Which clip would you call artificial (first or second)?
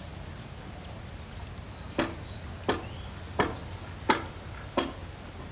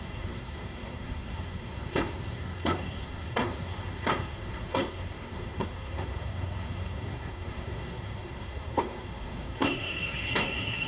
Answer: second